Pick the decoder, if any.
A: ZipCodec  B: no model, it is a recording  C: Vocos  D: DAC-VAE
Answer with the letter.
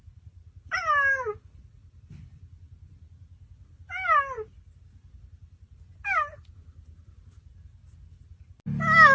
B